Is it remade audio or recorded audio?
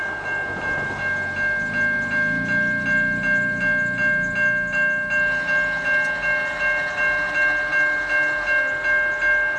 recorded